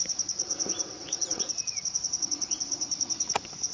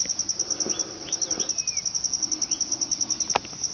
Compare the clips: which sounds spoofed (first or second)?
first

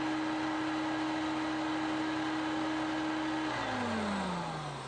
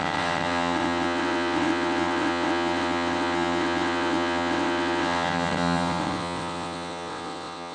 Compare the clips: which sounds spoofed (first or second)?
second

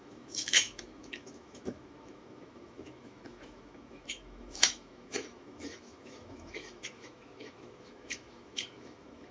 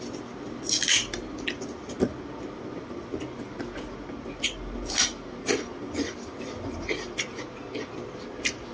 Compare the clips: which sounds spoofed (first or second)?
first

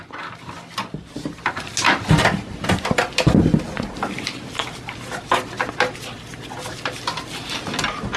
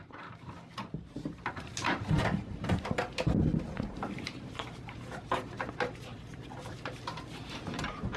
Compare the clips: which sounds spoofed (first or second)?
second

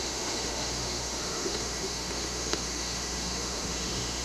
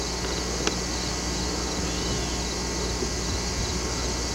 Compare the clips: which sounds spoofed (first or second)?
first